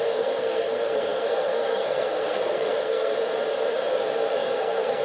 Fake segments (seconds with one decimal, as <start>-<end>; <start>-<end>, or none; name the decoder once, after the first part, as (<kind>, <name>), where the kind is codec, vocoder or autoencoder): 0.0-3.1 (codec, SNAC); 4.3-5.0